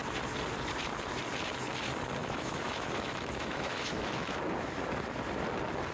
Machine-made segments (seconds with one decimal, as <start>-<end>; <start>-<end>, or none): 2.2-4.4